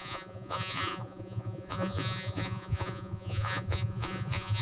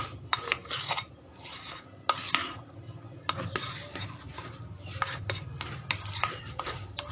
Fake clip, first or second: first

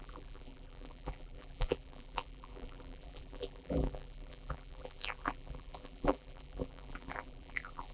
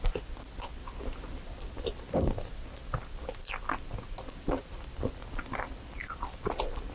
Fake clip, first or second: first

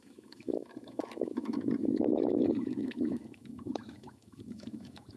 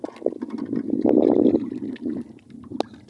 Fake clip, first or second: first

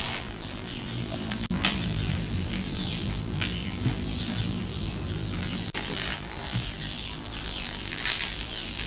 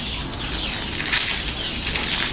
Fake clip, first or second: first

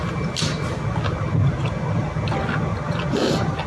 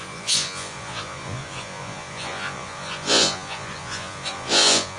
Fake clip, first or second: second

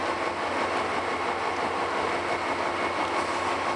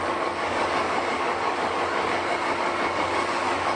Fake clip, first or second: second